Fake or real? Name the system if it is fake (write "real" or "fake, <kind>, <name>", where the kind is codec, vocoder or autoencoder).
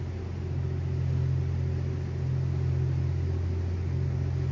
real